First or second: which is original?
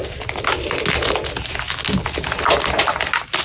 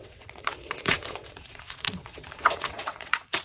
first